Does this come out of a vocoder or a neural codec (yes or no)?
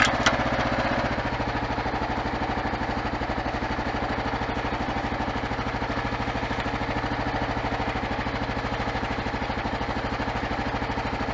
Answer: no